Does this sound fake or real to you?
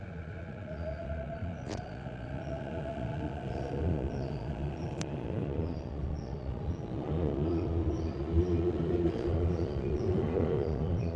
fake